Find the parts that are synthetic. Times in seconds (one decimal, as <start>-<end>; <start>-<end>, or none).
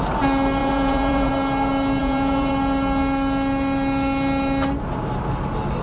0.6-1.3; 2.0-2.5